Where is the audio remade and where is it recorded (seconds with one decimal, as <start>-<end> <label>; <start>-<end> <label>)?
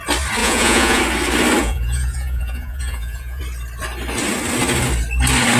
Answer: 0.0-0.4 recorded; 0.4-1.0 remade; 1.0-1.6 recorded; 1.6-3.4 remade; 3.4-5.6 recorded